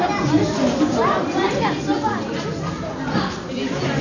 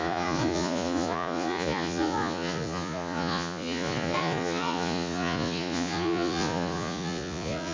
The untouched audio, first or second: first